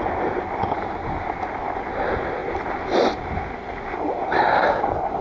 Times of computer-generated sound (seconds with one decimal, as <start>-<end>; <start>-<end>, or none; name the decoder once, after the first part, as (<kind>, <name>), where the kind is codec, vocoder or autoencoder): none